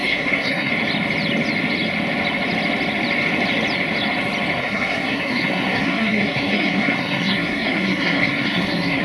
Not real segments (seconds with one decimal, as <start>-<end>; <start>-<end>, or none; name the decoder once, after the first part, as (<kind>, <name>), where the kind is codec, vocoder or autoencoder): 0.0-0.7 (codec, SNAC); 4.6-9.0